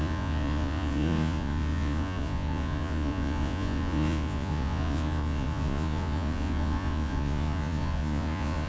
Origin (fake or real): fake